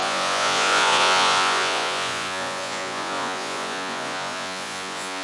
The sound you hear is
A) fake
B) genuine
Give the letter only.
A